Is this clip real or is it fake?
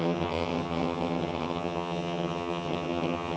fake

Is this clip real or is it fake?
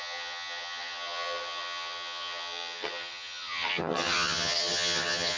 fake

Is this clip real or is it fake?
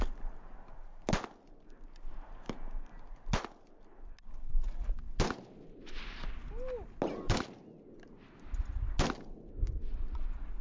real